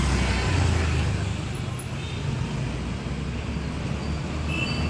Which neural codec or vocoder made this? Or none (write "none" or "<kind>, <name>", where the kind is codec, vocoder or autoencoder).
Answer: none